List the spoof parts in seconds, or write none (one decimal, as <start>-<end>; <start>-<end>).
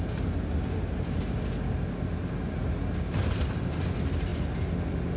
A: none